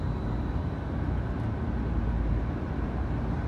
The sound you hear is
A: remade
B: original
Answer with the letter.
A